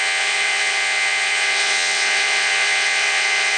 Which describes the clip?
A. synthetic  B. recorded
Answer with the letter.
A